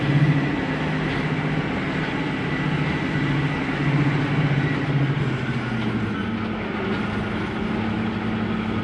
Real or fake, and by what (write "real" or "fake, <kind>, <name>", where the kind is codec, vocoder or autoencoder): real